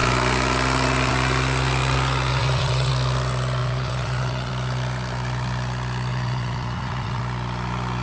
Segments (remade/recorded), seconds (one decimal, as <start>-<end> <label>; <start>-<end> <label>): 0.0-2.3 recorded; 2.3-2.9 remade; 2.9-3.6 recorded; 3.6-4.5 remade; 4.5-6.1 recorded; 6.1-7.2 remade; 7.2-8.0 recorded